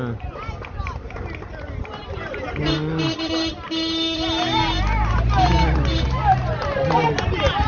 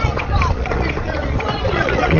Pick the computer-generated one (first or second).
second